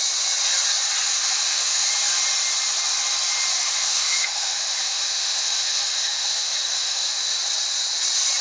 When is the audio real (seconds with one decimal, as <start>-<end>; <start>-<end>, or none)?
0.0-1.1; 1.9-3.6; 7.4-8.4